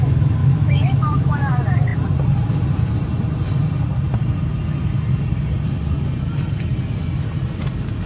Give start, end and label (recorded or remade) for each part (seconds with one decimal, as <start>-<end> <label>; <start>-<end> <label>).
0.0-0.4 recorded; 0.4-1.5 remade; 1.5-8.1 recorded